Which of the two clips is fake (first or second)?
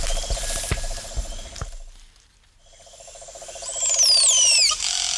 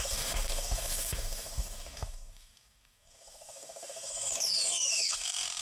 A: second